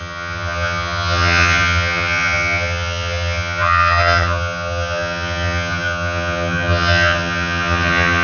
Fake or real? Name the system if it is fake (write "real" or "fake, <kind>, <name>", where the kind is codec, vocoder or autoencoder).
fake, vocoder, HiFi-GAN